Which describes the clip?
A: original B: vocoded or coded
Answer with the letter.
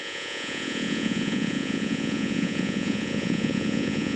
B